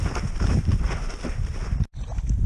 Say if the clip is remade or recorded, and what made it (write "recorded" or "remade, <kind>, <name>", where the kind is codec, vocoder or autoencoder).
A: recorded